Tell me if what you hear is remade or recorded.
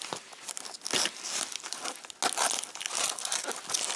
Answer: recorded